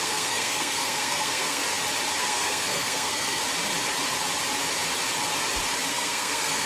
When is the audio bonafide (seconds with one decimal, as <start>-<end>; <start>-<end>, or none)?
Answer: 1.6-2.2; 3.4-5.9